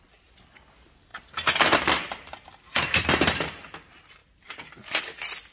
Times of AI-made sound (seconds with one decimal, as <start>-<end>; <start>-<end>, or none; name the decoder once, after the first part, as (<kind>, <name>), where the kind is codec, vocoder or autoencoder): 1.1-3.0 (vocoder, BigVGAN v2); 4.2-5.0